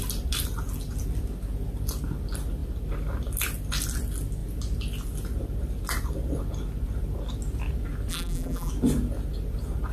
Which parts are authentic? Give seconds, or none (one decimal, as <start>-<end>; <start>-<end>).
0.0-8.1; 8.7-9.9